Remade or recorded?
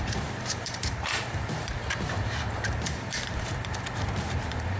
remade